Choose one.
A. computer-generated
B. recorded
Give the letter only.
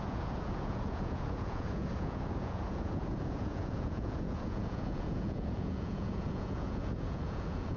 A